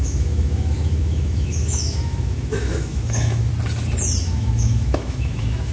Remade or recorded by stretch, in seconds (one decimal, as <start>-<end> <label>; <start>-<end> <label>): 0.0-3.5 remade; 3.5-4.2 recorded; 4.2-5.7 remade